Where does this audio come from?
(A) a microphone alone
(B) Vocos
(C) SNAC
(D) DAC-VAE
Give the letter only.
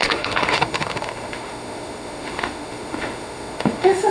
D